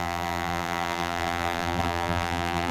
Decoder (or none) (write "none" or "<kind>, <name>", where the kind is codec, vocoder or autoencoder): vocoder, BigVGAN v2